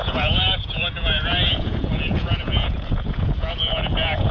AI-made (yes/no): yes